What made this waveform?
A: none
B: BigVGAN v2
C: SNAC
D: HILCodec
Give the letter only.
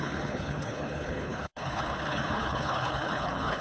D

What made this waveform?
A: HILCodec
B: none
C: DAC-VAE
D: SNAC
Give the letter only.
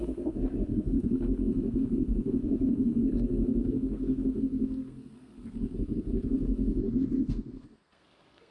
D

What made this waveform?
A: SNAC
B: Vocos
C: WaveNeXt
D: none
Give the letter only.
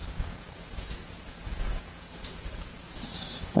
B